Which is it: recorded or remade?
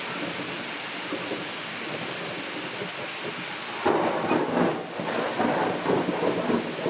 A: recorded